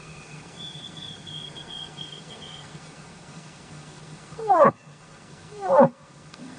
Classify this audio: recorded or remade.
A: remade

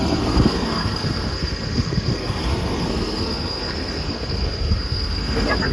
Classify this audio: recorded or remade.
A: remade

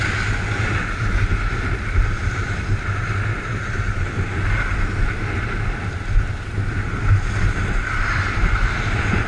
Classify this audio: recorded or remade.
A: recorded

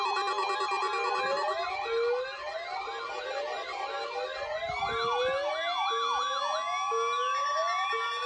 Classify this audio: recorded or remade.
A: recorded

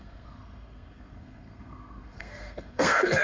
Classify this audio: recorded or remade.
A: remade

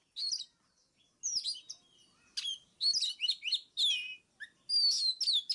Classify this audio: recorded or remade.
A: recorded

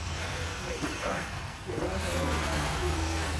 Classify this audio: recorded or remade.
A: remade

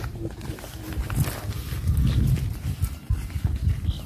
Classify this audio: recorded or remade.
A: recorded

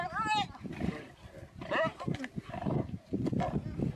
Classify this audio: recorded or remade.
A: recorded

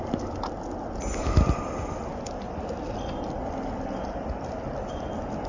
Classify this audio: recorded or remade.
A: recorded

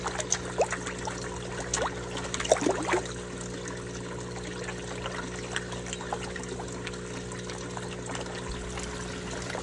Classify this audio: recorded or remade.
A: recorded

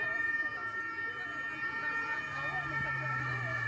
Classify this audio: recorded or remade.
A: recorded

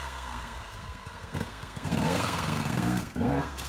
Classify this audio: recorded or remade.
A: remade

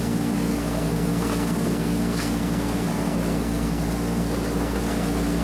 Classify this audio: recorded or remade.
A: remade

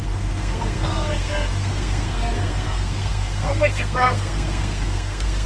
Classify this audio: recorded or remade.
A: remade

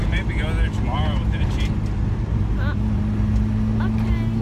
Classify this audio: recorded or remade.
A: recorded